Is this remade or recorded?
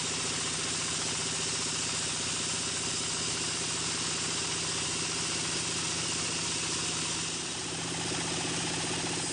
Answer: recorded